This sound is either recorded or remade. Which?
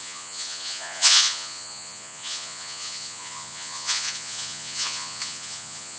remade